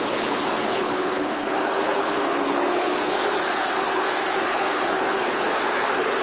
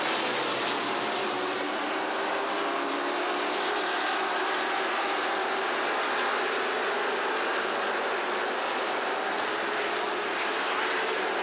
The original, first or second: second